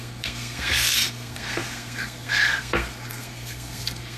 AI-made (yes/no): yes